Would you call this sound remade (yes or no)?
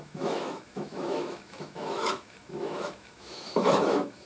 yes